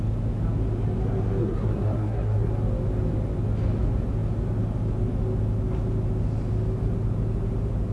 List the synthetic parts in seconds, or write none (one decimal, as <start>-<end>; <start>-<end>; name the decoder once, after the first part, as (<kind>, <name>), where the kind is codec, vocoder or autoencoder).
1.4-2.5 (codec, SNAC)